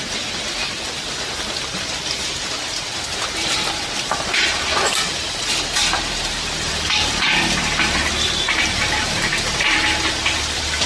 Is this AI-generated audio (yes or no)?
yes